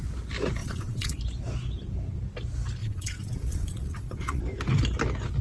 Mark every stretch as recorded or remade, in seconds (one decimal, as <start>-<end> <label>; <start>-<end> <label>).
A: 0.0-0.6 recorded; 0.6-1.2 remade; 1.2-2.8 recorded; 2.8-4.4 remade; 4.4-5.4 recorded